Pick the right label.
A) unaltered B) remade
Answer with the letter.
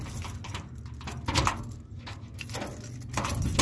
A